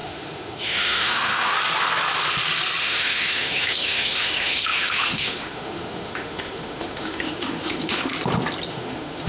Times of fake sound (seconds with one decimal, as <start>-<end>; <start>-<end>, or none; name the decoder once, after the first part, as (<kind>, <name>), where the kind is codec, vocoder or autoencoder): 0.0-1.5 (autoencoder, DAC-VAE); 2.8-8.1; 8.7-9.3